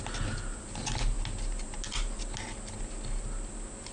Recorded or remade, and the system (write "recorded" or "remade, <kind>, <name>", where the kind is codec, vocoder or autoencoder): recorded